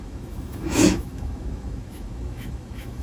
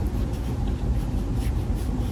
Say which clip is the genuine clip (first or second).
second